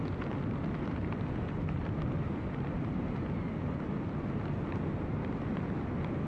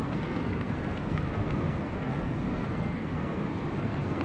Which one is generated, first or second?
second